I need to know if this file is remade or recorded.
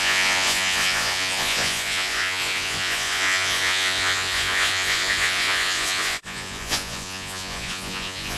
remade